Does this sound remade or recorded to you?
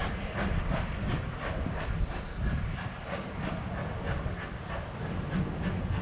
recorded